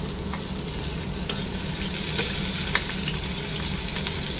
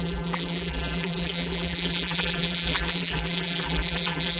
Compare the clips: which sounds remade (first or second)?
second